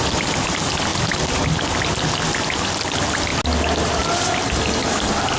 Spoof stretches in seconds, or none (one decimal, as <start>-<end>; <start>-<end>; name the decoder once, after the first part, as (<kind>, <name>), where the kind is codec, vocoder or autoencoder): none